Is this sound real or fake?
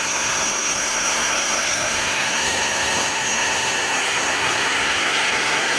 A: fake